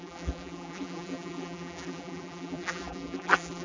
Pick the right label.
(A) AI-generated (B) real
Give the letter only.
A